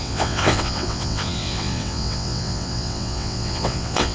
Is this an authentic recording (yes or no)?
no